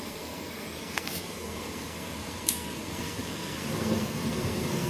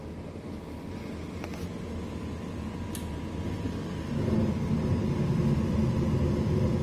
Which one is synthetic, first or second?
first